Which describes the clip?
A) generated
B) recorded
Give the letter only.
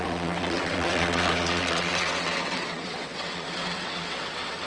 A